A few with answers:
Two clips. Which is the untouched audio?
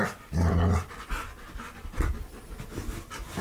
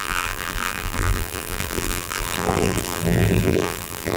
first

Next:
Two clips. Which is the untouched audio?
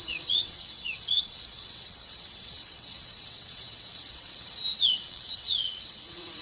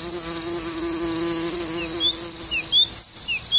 second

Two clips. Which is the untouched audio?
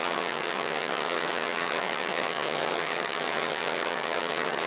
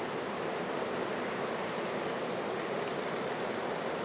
second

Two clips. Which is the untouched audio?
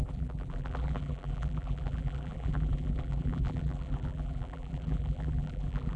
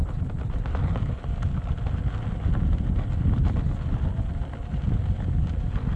second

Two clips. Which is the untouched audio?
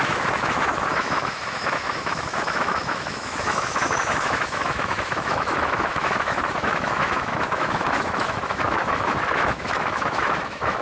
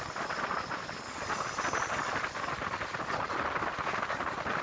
second